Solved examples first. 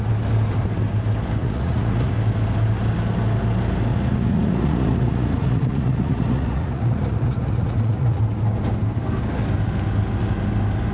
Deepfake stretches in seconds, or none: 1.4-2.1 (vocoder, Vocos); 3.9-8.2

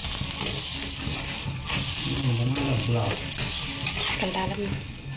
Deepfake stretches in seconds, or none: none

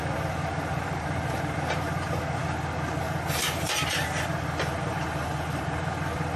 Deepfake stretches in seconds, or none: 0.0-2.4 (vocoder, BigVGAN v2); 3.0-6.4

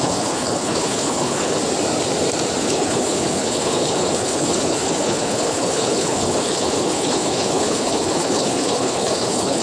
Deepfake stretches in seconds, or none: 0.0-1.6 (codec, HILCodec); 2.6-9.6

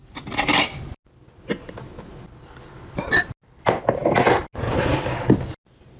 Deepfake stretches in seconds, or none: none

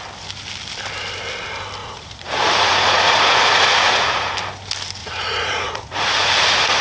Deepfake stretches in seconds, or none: 1.8-4.3 (vocoder, Vocos); 5.0-6.8

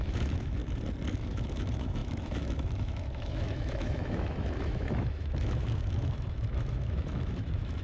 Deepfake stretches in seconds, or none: 0.0-0.6 (autoencoder, DAC-VAE); 1.1-7.8